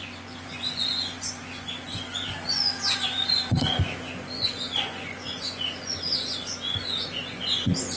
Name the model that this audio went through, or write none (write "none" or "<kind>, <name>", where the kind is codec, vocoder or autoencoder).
vocoder, Vocos